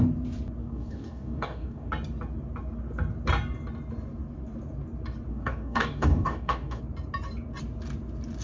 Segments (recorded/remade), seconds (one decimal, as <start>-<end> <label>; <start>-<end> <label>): 0.0-0.6 recorded; 0.6-1.9 remade; 1.9-5.3 recorded; 5.3-6.8 remade; 6.8-8.4 recorded